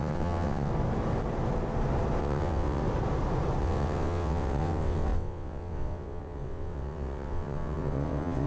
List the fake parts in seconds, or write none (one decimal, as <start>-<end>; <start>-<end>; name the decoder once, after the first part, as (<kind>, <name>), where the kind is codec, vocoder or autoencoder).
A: 0.0-0.7 (vocoder, WaveNeXt); 2.2-2.8; 3.6-8.5